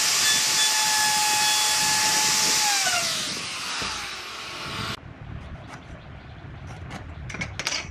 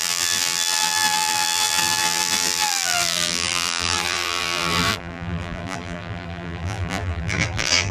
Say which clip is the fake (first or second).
second